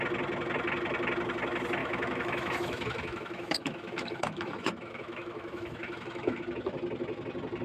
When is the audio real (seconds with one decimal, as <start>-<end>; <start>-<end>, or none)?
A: 0.0-1.8; 6.4-7.6

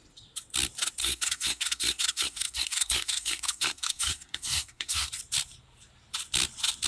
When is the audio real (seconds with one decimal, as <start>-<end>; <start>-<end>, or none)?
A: 0.0-1.0; 5.1-6.9

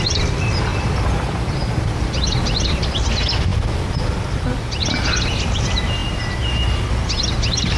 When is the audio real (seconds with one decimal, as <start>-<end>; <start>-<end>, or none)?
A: 0.0-7.8